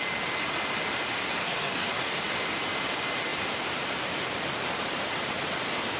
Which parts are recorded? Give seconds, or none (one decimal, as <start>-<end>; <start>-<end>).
0.0-1.4; 1.9-6.0